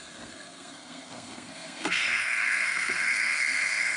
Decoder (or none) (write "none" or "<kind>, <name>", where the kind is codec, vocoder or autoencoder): codec, SNAC